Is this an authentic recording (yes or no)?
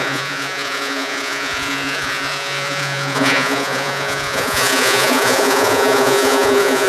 no